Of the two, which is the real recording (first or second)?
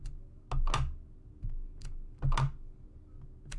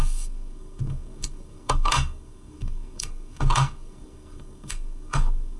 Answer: first